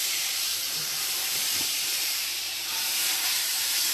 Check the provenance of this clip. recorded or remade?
remade